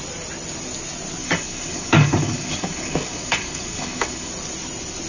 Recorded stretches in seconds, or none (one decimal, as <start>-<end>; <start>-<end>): 0.0-1.2; 4.3-5.1